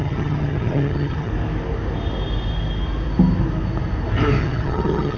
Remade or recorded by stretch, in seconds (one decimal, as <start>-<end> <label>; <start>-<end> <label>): 0.0-1.3 remade; 1.3-4.4 recorded; 4.4-5.2 remade